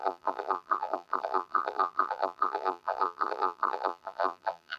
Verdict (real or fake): fake